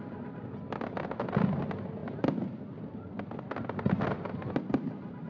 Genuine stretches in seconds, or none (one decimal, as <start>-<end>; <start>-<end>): 0.0-5.3